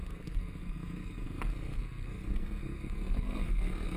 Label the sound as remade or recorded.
remade